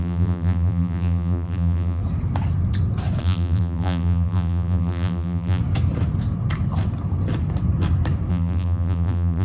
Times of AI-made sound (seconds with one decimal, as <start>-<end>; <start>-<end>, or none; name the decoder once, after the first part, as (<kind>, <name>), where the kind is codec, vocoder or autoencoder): 0.0-2.0 (vocoder, BigVGAN v2); 3.2-5.6; 8.3-9.4